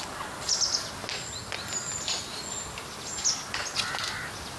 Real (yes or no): yes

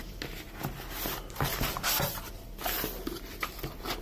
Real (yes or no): yes